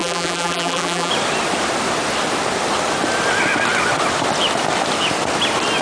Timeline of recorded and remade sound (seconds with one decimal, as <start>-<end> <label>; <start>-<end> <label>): 0.0-1.1 remade; 1.1-5.8 recorded